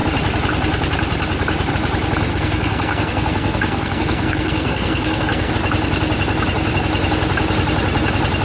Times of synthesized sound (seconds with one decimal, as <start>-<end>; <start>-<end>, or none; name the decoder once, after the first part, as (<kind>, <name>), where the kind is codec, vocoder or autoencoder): 2.3-5.5 (codec, SNAC)